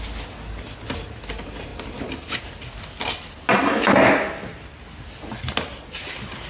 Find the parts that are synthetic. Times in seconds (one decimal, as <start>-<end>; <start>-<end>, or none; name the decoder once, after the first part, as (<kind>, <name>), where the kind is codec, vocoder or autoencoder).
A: none